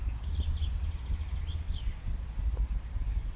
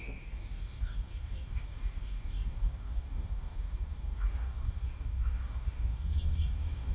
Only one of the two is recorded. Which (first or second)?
first